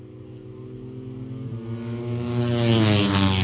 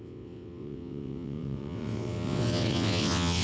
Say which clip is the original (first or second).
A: first